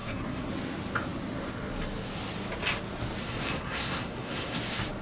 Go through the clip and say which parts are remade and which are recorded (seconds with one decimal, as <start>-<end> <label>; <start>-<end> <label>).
0.0-0.5 remade; 0.5-3.2 recorded; 3.2-4.6 remade; 4.6-5.0 recorded

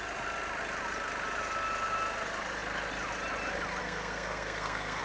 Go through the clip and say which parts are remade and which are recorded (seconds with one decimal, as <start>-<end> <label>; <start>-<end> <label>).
0.0-3.8 recorded; 3.8-5.0 remade

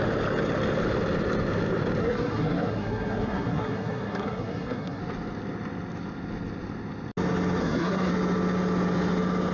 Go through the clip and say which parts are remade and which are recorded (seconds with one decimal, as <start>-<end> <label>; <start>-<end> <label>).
0.0-2.0 recorded; 2.0-5.0 remade; 5.0-7.6 recorded; 7.6-8.1 remade; 8.1-9.5 recorded

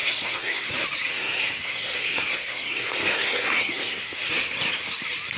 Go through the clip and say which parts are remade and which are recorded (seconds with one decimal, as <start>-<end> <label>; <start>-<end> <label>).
0.0-0.7 remade; 0.7-1.1 recorded; 1.1-4.3 remade; 4.3-5.4 recorded

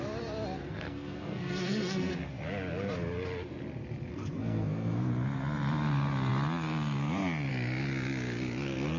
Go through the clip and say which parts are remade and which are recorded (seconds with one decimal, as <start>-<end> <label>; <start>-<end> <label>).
0.0-0.6 recorded; 0.6-2.1 remade; 2.1-4.1 recorded; 4.1-5.1 remade; 5.1-9.0 recorded

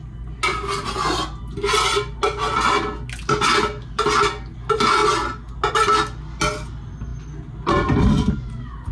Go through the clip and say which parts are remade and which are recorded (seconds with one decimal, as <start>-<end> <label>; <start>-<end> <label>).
0.0-8.9 recorded

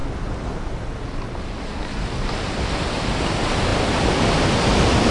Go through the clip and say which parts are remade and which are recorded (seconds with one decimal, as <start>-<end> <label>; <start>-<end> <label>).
0.0-5.1 recorded

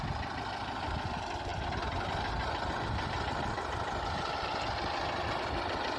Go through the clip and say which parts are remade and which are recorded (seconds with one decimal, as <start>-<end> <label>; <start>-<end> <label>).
0.0-6.0 recorded